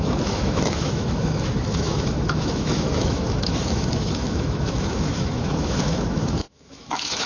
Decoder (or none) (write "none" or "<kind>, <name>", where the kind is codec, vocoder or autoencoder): autoencoder, DAC-VAE